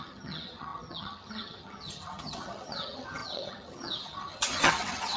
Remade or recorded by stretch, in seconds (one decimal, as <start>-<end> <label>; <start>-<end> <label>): 0.0-5.2 remade